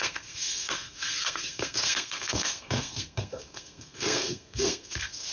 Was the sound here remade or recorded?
remade